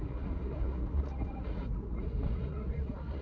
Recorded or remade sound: remade